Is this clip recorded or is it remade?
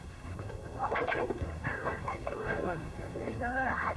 remade